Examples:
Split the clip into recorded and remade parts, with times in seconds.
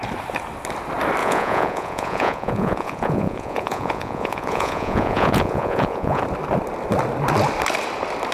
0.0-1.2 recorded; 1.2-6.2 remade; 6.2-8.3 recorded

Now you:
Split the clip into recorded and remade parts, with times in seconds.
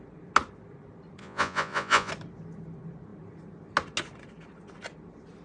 0.0-1.2 recorded; 1.2-2.1 remade; 2.1-5.4 recorded